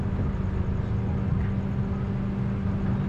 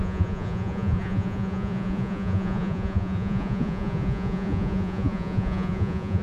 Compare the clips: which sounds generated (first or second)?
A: second